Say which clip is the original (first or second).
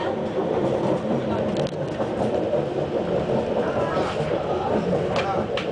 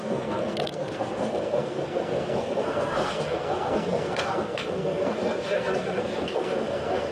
first